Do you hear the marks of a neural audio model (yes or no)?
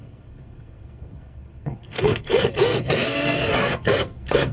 yes